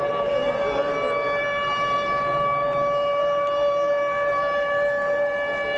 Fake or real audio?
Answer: real